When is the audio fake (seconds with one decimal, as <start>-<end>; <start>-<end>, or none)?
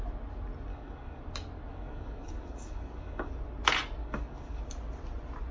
0.7-1.2; 1.7-3.3; 4.0-4.6